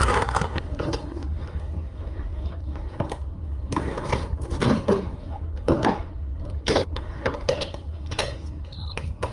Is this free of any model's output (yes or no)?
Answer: no